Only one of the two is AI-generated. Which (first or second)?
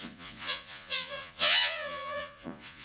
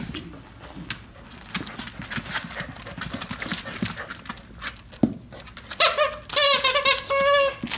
first